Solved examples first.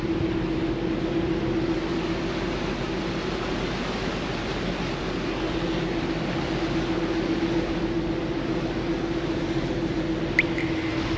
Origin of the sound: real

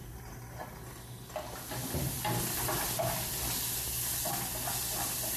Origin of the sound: real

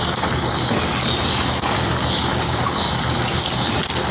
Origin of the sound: real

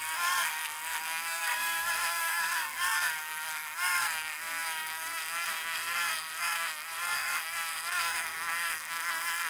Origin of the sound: fake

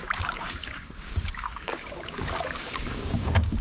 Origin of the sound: fake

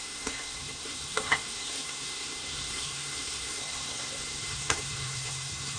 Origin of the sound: fake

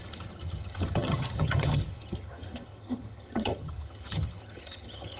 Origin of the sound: fake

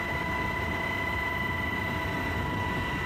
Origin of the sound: real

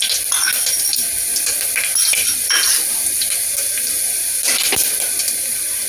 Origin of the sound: fake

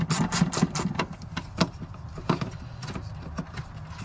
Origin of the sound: real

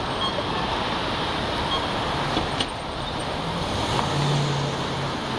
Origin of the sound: real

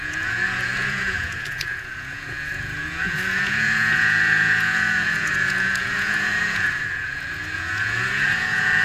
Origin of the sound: fake